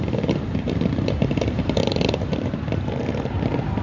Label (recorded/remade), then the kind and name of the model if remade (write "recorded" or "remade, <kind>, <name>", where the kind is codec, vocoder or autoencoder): remade, vocoder, BigVGAN v2